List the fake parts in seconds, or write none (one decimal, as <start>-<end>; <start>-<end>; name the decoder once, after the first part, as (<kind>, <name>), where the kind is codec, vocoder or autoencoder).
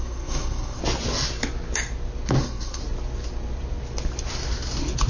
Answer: 0.0-0.8 (codec, SNAC); 2.4-2.8